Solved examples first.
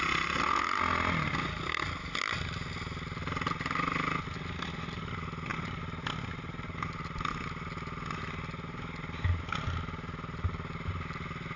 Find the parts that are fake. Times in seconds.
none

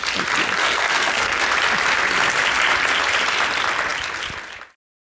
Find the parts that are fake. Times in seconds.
0.6-1.4